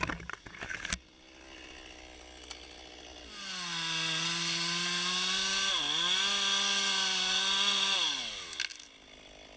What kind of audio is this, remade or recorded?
recorded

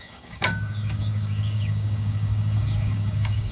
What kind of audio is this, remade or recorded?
remade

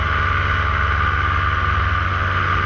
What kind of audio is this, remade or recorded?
recorded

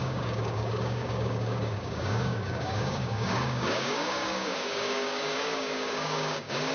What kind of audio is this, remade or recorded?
remade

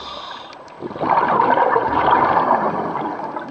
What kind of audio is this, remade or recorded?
recorded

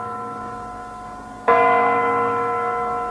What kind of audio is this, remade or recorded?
remade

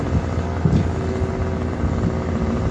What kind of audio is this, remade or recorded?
recorded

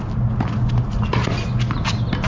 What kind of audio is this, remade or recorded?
recorded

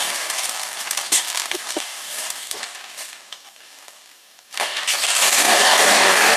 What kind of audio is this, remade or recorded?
remade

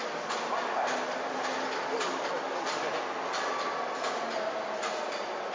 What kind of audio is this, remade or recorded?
recorded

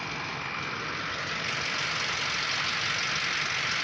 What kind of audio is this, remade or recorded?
recorded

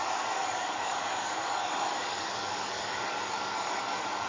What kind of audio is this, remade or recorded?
remade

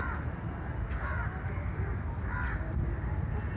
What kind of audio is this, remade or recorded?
recorded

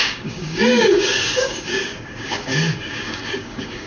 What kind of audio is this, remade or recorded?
remade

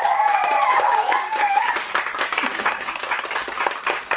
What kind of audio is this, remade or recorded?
remade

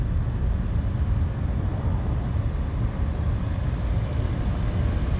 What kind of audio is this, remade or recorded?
recorded